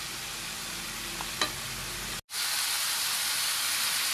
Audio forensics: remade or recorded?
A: recorded